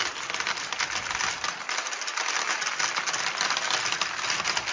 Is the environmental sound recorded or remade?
recorded